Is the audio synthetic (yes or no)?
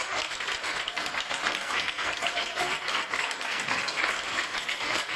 yes